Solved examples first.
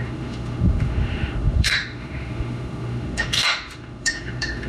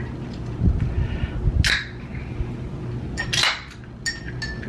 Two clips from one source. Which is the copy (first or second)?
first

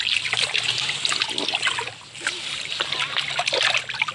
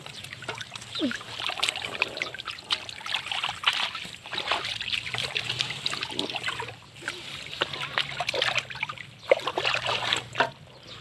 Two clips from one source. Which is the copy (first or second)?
second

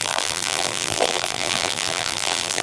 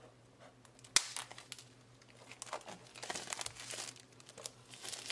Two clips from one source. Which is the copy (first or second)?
first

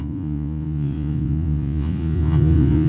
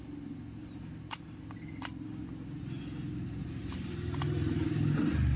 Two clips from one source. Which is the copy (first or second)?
first